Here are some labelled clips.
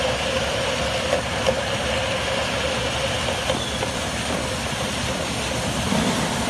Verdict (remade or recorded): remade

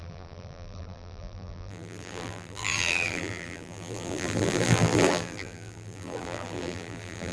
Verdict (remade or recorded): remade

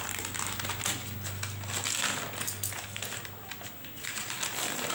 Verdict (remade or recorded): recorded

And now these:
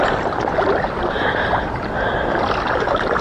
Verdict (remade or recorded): remade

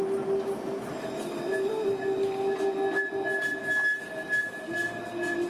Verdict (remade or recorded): recorded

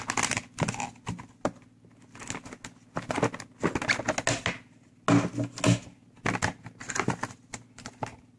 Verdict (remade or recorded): recorded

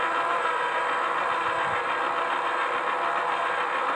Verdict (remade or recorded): remade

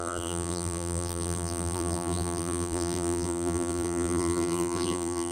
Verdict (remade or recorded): remade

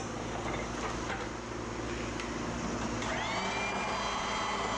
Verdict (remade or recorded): recorded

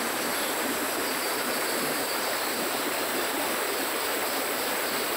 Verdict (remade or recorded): remade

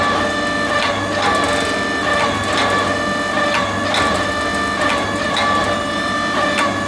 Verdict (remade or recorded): recorded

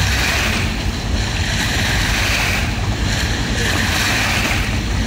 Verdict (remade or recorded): remade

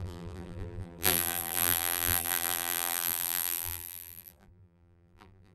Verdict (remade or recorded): remade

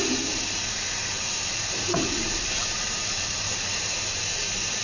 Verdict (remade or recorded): remade